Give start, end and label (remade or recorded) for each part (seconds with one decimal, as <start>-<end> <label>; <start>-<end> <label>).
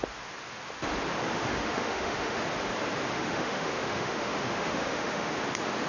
0.0-1.3 recorded; 1.3-2.4 remade; 2.4-3.1 recorded; 3.1-5.3 remade; 5.3-5.9 recorded